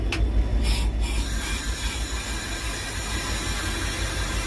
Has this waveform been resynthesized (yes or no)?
no